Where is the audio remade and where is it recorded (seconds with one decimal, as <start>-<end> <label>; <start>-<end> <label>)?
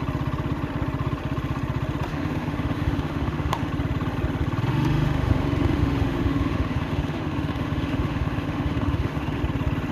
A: 0.0-2.1 recorded; 2.1-3.7 remade; 3.7-4.7 recorded; 4.7-9.4 remade; 9.4-9.9 recorded